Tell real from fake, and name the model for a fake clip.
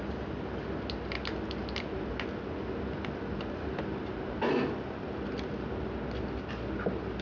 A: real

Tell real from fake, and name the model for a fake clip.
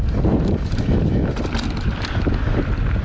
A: real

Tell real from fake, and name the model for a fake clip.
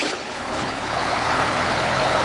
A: fake, codec, HILCodec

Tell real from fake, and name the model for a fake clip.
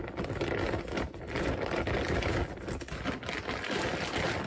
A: real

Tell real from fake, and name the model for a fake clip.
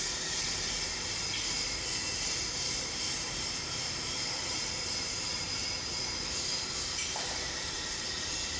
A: fake, vocoder, BigVGAN v2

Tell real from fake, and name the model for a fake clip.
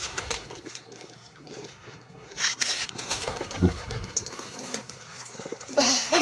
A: fake, codec, SNAC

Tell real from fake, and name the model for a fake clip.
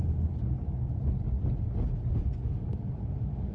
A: real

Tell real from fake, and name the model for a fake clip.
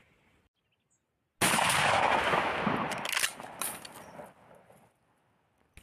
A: real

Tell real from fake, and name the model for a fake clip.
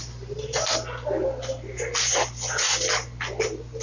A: real